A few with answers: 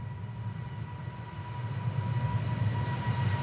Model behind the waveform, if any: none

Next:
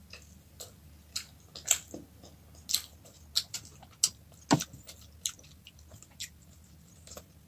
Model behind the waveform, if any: none